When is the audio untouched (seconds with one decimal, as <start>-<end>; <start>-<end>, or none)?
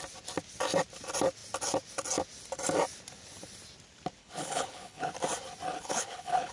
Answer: 0.0-4.2; 5.1-5.7